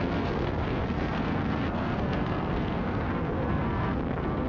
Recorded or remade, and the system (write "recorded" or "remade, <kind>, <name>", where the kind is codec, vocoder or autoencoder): remade, codec, SNAC